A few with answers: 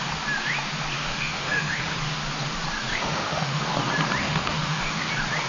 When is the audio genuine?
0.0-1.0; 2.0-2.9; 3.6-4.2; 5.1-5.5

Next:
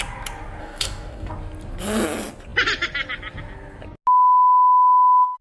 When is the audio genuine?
0.0-0.6; 1.3-5.4

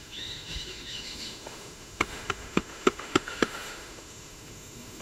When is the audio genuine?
none